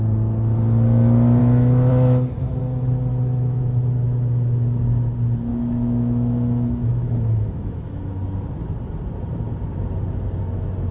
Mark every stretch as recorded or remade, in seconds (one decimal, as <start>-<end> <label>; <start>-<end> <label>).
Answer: 0.0-1.4 recorded; 1.4-2.6 remade; 2.6-3.1 recorded; 3.1-3.6 remade; 3.6-5.5 recorded; 5.5-8.2 remade; 8.2-10.9 recorded